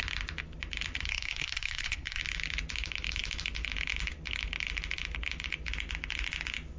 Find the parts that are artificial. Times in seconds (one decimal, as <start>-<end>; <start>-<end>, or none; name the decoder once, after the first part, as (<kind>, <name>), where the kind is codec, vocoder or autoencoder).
1.1-2.2 (codec, SNAC)